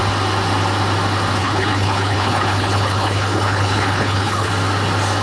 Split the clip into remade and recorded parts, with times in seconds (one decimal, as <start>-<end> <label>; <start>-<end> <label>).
0.0-1.4 recorded; 1.4-4.5 remade; 4.5-5.2 recorded